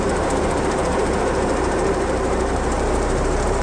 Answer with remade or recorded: remade